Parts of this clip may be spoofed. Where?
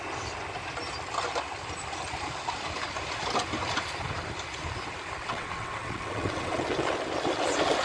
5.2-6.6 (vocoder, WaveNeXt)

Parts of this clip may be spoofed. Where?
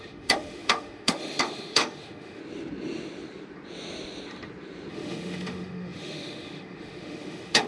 0.0-2.4 (autoencoder, DAC-VAE); 4.9-7.7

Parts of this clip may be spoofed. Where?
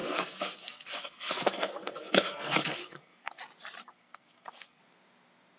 0.0-3.4 (codec, SNAC); 3.8-4.8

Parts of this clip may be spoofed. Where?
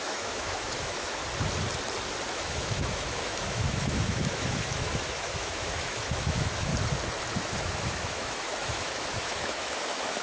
0.0-1.2 (autoencoder, DAC-VAE); 2.3-6.7; 7.4-10.2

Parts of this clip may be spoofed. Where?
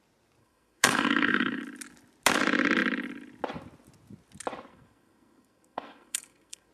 0.4-1.6 (codec, SNAC); 4.7-6.7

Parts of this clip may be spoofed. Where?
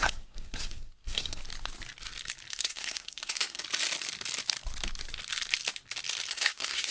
0.0-1.4 (codec, SNAC); 2.5-3.6; 6.3-6.9